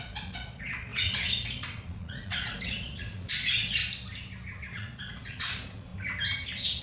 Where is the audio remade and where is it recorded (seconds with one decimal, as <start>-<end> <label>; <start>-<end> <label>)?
0.0-3.8 remade; 3.8-4.7 recorded; 4.7-5.9 remade; 5.9-6.8 recorded